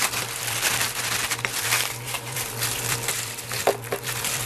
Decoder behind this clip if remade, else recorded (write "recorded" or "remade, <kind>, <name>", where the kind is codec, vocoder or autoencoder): remade, vocoder, BigVGAN v2